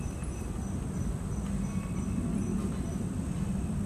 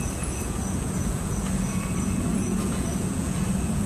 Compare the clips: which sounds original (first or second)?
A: first